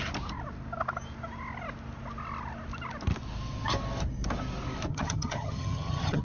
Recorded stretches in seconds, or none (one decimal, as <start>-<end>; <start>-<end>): 0.0-4.9